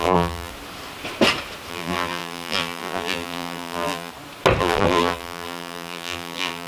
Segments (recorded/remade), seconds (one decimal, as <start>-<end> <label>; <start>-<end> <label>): 0.0-0.5 remade; 0.5-1.7 recorded; 1.7-4.1 remade; 4.1-4.6 recorded; 4.6-6.7 remade